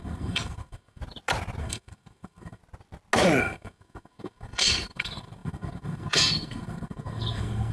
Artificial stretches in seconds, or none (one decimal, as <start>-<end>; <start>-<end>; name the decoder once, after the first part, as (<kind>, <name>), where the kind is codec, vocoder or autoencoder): 0.0-1.0 (codec, SNAC); 1.6-2.6; 3.4-7.7